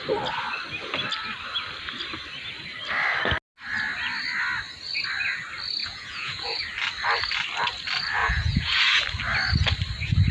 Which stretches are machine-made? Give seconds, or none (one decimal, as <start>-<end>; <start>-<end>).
5.8-6.6; 8.2-8.8